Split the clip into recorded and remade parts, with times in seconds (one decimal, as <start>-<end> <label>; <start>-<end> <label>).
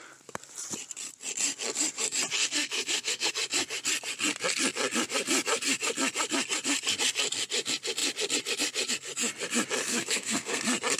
0.0-2.4 recorded; 2.4-3.3 remade; 3.3-9.9 recorded; 9.9-10.6 remade; 10.6-11.0 recorded